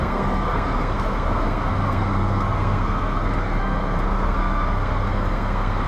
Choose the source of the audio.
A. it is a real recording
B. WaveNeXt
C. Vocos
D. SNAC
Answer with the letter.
D